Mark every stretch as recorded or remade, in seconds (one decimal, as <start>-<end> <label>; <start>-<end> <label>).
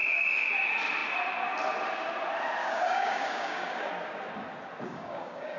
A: 0.0-0.5 remade; 0.5-2.6 recorded; 2.6-3.9 remade; 3.9-4.9 recorded; 4.9-5.6 remade